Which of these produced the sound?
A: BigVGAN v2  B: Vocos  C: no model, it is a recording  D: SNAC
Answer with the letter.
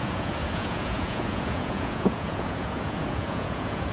B